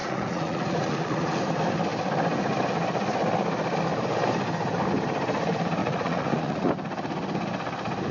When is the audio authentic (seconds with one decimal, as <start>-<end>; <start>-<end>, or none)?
1.4-5.8; 6.7-8.1